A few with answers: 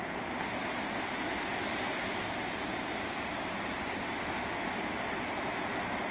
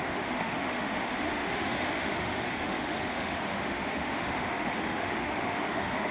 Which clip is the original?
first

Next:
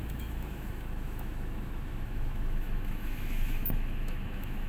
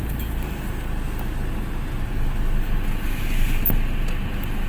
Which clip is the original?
second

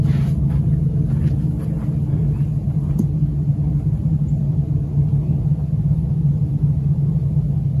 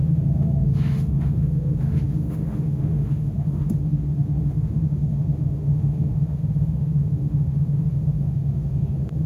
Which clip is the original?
first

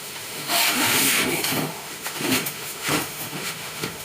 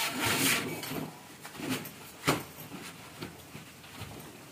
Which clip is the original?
second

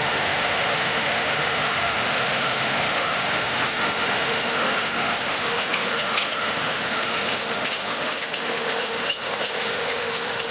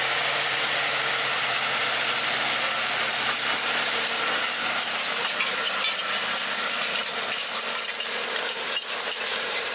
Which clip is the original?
second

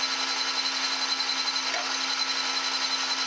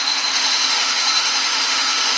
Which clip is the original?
first